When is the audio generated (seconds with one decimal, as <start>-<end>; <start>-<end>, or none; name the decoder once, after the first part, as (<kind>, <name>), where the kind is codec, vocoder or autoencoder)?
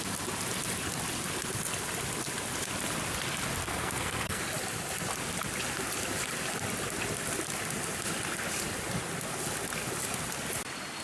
3.6-4.4 (codec, SNAC)